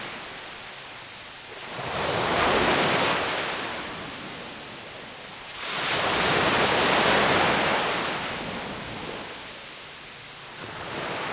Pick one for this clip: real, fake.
real